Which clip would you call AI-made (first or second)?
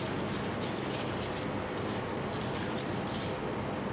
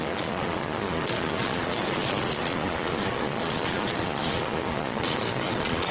second